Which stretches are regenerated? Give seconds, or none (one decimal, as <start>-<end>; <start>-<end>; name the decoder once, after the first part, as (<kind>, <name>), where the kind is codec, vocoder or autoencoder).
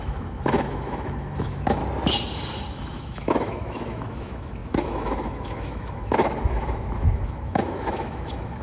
0.0-1.8 (autoencoder, DAC-VAE); 2.7-8.6